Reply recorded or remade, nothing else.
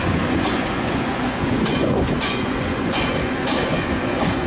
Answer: remade